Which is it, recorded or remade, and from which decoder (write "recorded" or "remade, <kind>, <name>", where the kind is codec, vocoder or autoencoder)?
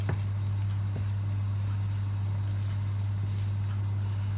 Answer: recorded